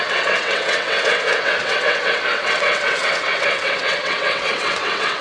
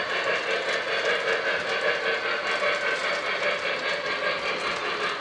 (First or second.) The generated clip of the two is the first